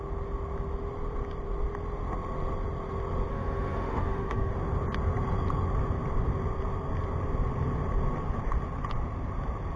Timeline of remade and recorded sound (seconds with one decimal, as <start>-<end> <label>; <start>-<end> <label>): 0.0-3.3 recorded; 3.3-4.5 remade; 4.5-9.8 recorded